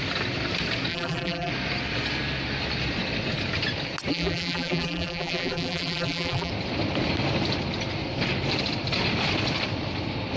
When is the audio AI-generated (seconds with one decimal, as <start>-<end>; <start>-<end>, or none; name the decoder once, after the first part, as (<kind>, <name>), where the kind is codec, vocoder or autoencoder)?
0.9-1.5 (vocoder, BigVGAN v2); 4.1-6.5